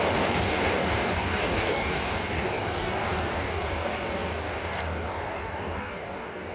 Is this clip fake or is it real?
fake